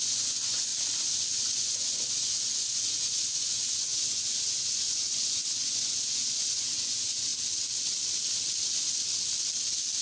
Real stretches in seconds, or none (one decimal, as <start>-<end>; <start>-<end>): 0.7-1.4; 7.3-10.0